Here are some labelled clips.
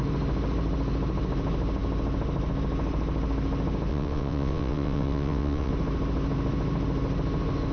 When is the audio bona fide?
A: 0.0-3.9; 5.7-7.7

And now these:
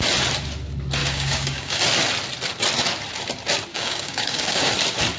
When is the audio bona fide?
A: 0.0-1.0; 1.8-3.7; 4.7-5.2